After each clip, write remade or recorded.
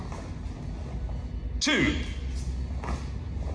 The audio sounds recorded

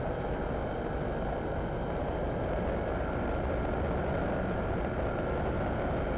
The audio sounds recorded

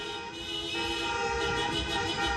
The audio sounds recorded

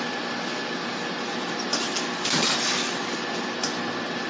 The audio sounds recorded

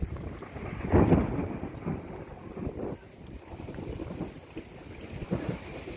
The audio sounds recorded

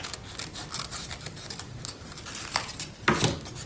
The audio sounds recorded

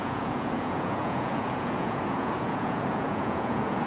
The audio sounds remade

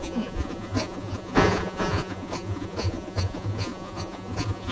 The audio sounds remade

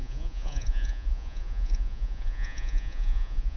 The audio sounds remade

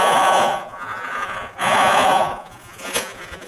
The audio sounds remade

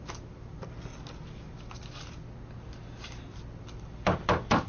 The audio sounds recorded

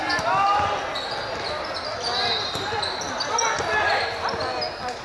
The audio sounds recorded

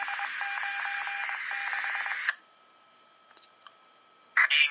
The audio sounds recorded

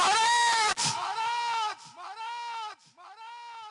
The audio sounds recorded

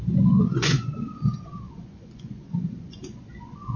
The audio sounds remade